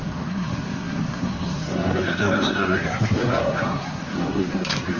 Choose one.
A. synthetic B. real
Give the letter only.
A